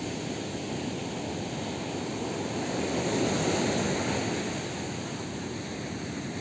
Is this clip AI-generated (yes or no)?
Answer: no